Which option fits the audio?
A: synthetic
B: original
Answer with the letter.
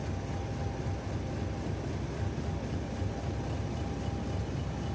B